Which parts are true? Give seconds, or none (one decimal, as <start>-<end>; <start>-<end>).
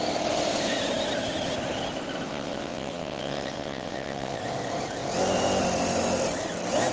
0.0-2.3; 4.4-6.9